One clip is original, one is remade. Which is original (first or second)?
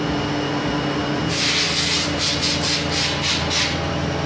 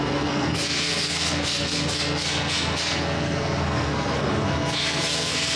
first